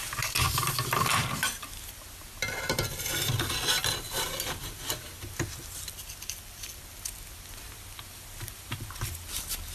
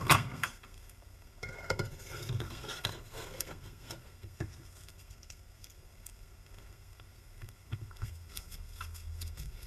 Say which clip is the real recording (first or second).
first